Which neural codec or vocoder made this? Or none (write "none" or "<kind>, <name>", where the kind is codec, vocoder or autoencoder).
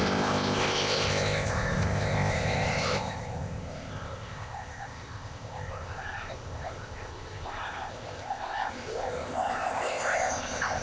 codec, ZipCodec